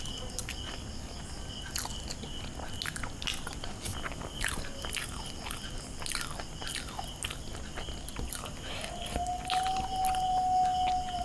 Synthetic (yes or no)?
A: no